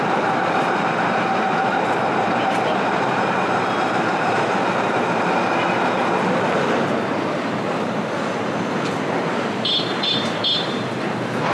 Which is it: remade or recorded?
remade